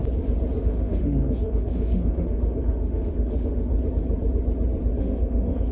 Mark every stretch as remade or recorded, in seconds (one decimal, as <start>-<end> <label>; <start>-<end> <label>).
0.0-0.6 recorded; 0.6-3.7 remade; 3.7-5.0 recorded; 5.0-5.7 remade